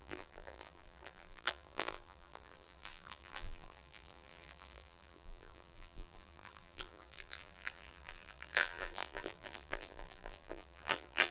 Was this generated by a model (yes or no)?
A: yes